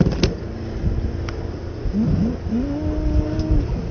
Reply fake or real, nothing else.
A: real